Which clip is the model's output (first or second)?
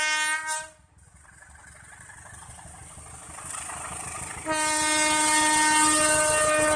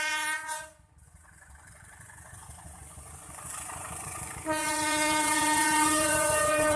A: second